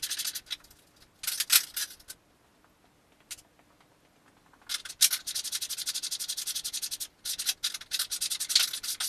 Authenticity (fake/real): real